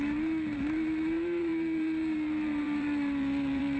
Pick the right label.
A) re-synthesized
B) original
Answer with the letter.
A